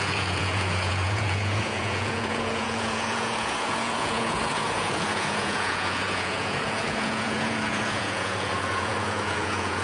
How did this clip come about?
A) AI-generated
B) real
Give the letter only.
A